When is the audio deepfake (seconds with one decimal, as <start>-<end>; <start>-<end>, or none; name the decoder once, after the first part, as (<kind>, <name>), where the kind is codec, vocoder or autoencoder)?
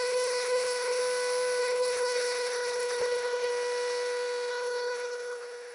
0.0-1.0 (codec, HILCodec); 1.6-3.5; 4.5-5.7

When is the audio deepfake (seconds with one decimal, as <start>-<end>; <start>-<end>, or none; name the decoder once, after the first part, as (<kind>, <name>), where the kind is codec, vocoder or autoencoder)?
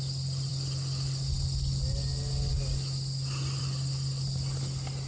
none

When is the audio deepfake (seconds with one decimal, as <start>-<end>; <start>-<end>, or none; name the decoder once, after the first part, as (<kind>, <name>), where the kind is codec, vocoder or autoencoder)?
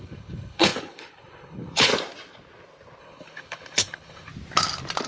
0.0-1.9 (codec, HILCodec); 3.0-4.3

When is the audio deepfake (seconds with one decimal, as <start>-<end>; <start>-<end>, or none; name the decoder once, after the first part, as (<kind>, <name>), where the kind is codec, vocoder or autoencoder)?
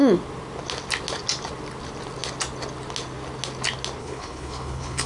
4.0-5.1 (codec, HILCodec)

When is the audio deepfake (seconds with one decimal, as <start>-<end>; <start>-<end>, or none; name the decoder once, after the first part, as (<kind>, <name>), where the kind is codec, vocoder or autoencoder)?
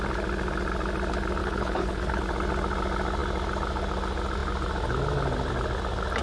1.4-2.2 (codec, HILCodec)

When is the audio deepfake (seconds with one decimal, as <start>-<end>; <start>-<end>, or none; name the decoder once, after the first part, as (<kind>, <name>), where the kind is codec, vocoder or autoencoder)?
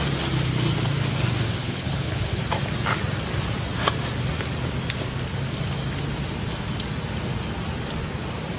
1.6-2.4 (codec, HILCodec)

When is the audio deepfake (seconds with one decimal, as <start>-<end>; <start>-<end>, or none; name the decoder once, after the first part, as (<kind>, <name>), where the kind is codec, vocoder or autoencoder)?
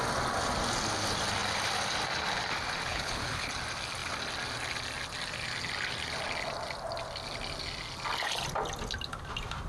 2.9-3.5 (codec, HILCodec)